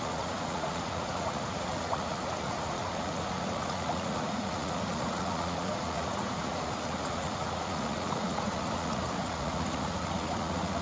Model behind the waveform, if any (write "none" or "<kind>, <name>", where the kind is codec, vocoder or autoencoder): vocoder, Vocos